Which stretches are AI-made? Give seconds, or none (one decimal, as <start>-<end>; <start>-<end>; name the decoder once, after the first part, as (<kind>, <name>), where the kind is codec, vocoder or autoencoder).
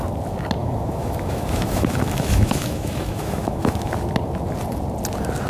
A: 0.6-3.9 (autoencoder, DAC-VAE)